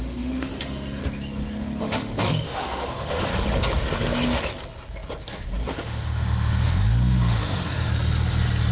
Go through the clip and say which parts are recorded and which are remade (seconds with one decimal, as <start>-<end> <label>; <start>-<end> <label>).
0.0-1.0 remade; 1.0-1.8 recorded; 1.8-3.3 remade; 3.3-5.7 recorded; 5.7-7.9 remade; 7.9-8.7 recorded

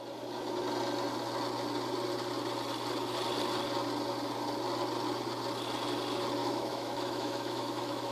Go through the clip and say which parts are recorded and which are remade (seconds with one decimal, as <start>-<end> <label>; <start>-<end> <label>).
0.0-6.4 recorded; 6.4-8.1 remade

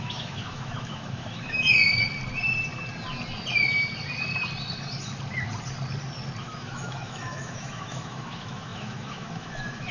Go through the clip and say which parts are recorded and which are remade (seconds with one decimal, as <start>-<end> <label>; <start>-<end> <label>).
0.0-1.8 remade; 1.8-6.4 recorded; 6.4-9.9 remade

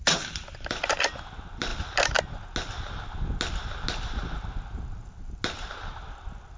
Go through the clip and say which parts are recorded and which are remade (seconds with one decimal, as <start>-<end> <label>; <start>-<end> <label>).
0.0-6.6 recorded